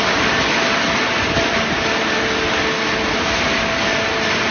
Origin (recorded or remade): recorded